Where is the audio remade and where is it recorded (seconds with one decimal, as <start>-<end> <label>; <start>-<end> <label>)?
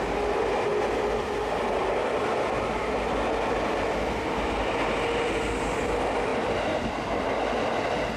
0.0-6.3 recorded; 6.3-6.9 remade; 6.9-8.2 recorded